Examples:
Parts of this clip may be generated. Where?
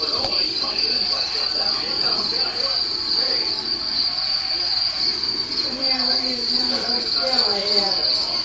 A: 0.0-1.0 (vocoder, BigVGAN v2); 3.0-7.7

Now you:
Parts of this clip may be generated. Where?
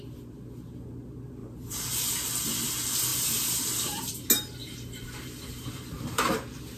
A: 1.4-2.1 (vocoder, BigVGAN v2); 4.6-6.3